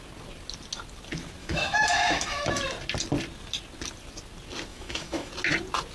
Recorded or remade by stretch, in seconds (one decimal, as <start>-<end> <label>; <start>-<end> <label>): 0.0-1.4 recorded; 1.4-2.5 remade; 2.5-4.7 recorded; 4.7-5.3 remade; 5.3-5.9 recorded